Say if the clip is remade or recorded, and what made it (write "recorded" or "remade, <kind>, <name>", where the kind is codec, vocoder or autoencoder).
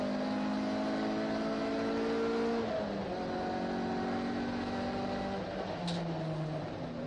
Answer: recorded